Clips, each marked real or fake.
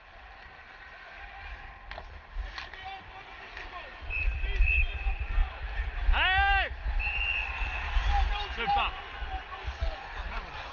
real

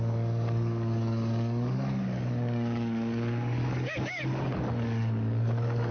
fake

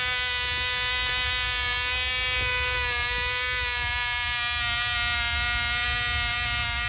real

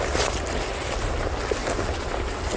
real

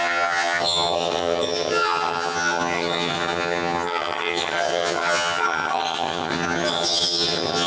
fake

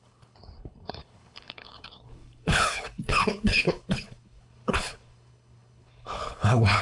fake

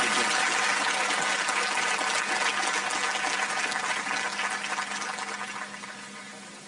real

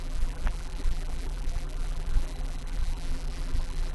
fake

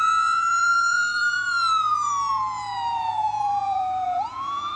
fake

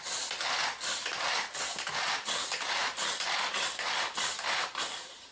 real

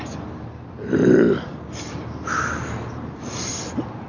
real